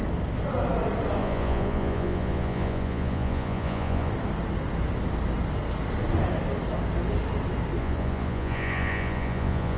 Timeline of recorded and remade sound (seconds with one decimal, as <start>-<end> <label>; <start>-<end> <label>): 0.0-1.2 recorded; 1.2-4.1 remade; 4.1-7.8 recorded; 7.8-9.8 remade